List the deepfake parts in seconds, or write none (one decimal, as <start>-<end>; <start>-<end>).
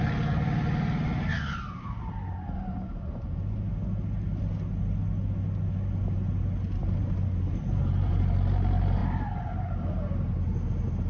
none